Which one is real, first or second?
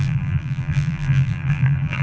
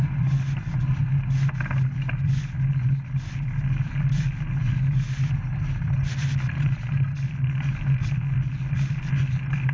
second